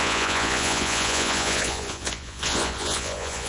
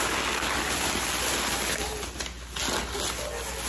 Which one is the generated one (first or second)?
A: first